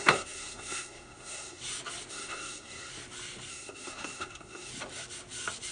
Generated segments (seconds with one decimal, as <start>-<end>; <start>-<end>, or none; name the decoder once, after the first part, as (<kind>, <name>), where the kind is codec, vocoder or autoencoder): 0.0-1.6 (codec, SNAC); 2.1-2.9; 3.5-4.7